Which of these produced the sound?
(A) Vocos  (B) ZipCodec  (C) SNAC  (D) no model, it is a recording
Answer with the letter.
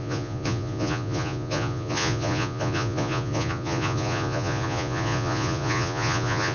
A